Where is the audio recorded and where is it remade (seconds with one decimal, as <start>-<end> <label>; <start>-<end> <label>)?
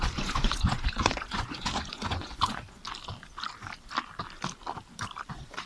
0.0-2.8 remade; 2.8-5.3 recorded; 5.3-5.7 remade